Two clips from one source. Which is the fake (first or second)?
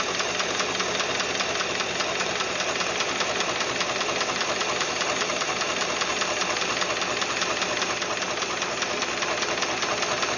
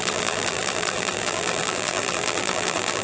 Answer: second